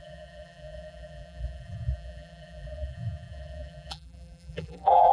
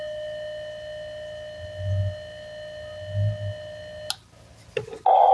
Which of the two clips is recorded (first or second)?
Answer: second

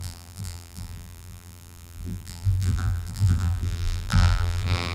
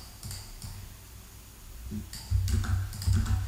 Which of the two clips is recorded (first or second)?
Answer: second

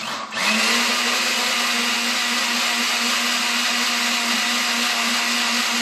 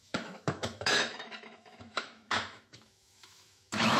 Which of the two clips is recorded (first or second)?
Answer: first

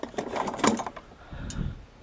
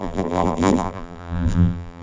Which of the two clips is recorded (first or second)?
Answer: first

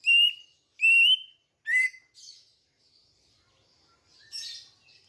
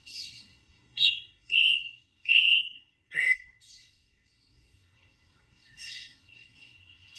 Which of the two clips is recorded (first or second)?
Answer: first